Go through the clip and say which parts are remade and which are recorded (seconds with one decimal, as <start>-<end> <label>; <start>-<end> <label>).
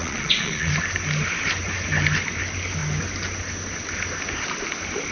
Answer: 0.0-0.7 remade; 0.7-5.1 recorded